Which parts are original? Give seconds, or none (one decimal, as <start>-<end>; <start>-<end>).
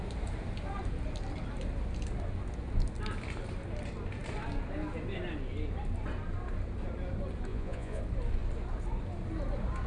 0.0-7.5; 8.0-9.9